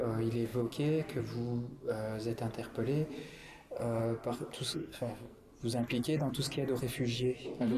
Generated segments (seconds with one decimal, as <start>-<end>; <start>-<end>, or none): 4.8-5.5